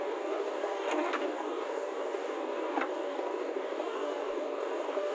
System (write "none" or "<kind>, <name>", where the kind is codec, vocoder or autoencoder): codec, DAC